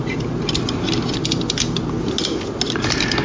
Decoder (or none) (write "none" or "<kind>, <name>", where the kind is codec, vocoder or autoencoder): none